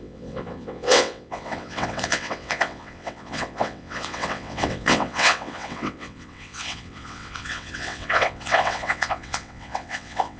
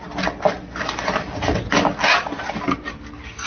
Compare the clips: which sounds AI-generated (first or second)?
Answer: first